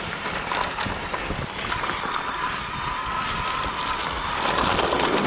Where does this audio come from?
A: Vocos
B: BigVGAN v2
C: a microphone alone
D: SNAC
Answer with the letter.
C